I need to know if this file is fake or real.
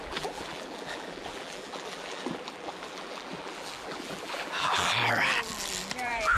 fake